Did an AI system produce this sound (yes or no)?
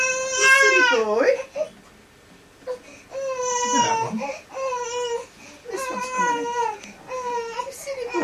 no